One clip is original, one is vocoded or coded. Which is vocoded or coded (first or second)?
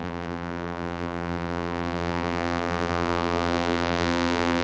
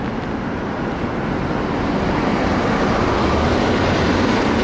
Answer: first